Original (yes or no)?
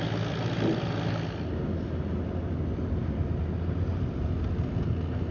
yes